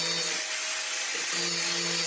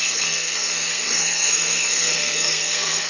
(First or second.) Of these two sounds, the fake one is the second